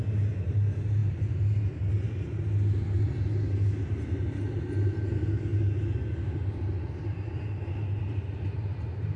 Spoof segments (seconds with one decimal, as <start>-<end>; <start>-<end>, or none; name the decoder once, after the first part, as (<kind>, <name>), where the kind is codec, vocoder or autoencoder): none